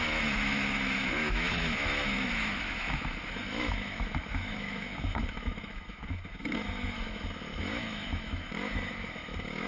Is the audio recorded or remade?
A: remade